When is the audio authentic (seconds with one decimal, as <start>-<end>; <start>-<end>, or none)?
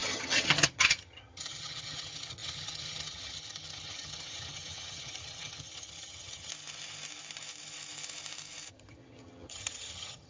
6.5-8.7